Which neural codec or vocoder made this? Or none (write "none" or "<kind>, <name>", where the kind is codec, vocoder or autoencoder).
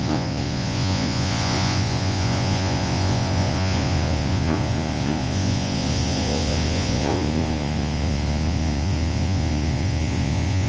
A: vocoder, Vocos